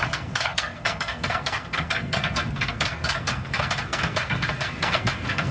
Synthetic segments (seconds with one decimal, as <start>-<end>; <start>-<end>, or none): 0.0-5.5

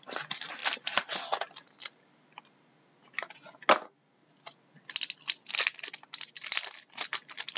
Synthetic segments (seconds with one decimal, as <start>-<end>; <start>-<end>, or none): none

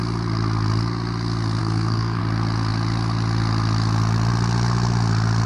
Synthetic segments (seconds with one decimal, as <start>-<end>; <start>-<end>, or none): 1.6-2.2

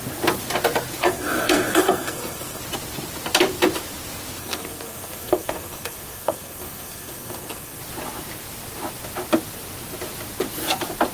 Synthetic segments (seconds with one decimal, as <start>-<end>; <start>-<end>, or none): 1.0-2.6; 4.4-7.8

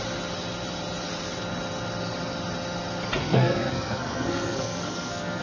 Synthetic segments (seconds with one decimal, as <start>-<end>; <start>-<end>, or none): 3.2-5.4

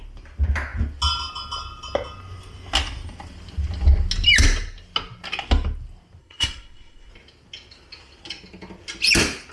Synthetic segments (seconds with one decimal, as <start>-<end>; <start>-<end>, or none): 6.2-7.1